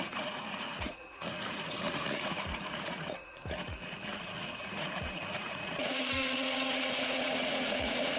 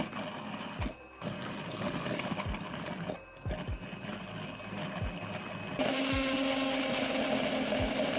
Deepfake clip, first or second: first